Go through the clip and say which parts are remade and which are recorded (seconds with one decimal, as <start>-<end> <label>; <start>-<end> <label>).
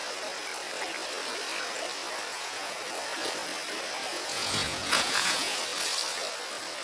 0.0-2.3 recorded; 2.3-2.8 remade; 2.8-4.1 recorded; 4.1-5.6 remade; 5.6-6.8 recorded